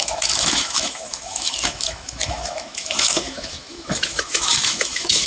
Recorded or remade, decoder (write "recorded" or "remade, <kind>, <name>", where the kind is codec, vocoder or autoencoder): remade, autoencoder, DAC-VAE